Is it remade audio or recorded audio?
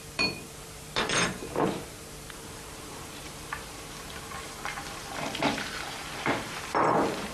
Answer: remade